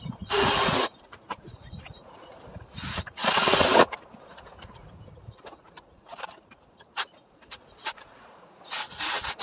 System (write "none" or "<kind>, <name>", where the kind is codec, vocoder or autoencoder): vocoder, Vocos